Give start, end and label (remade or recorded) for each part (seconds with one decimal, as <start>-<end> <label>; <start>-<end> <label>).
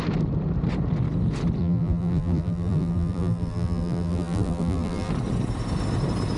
0.0-1.6 recorded; 1.6-5.1 remade; 5.1-6.4 recorded